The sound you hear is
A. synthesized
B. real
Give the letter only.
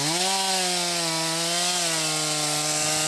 B